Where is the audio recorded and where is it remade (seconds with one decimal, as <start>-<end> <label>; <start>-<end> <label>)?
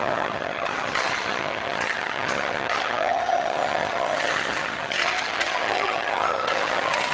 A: 0.0-7.1 remade